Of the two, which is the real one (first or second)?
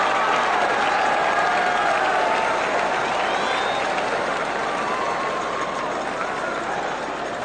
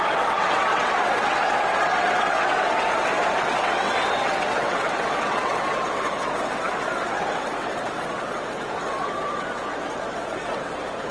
first